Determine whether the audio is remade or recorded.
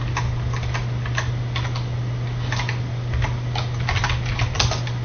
recorded